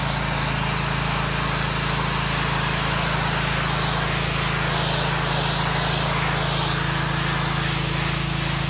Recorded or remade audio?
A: recorded